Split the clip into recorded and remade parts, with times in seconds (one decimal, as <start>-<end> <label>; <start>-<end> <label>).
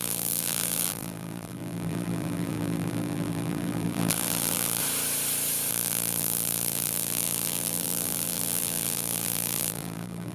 0.0-4.8 remade; 4.8-5.7 recorded; 5.7-10.3 remade